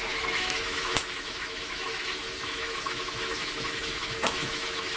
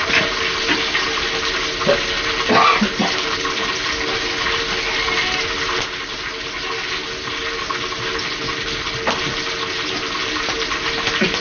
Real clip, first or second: second